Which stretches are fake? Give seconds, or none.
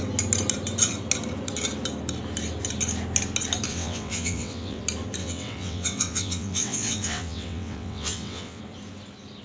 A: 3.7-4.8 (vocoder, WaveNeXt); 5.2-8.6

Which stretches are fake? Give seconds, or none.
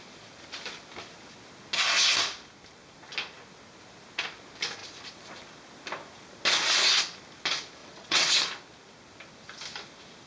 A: 7.8-8.3 (vocoder, WaveNeXt)